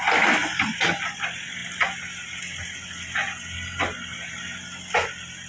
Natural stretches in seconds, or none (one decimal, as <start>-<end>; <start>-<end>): 0.0-5.5